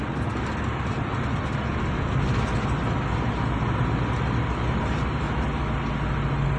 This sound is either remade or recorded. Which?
recorded